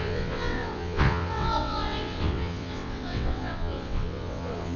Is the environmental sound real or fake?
fake